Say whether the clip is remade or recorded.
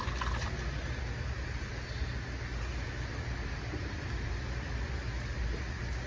recorded